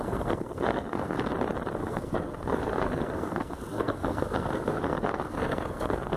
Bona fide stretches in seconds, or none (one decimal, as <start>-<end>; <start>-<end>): 1.3-1.8